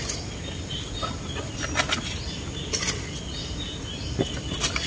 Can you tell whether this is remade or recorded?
recorded